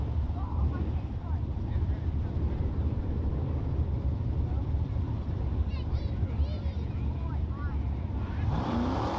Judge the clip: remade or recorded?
remade